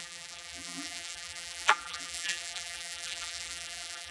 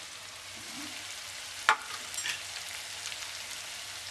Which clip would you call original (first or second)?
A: second